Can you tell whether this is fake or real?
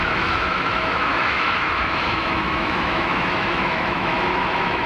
fake